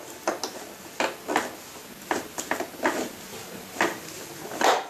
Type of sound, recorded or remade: recorded